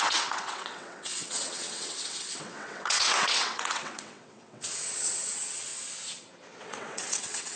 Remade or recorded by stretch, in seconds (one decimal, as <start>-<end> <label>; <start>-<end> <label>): 0.0-5.7 remade; 5.7-6.6 recorded; 6.6-7.6 remade